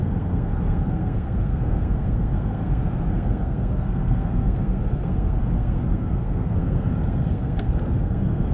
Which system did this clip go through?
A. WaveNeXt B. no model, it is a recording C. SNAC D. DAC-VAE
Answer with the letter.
C